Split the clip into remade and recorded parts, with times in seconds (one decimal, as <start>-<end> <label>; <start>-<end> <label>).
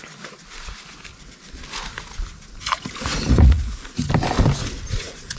0.0-2.5 recorded; 2.5-4.1 remade; 4.1-4.6 recorded; 4.6-5.4 remade